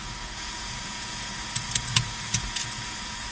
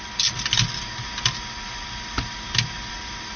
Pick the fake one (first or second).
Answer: first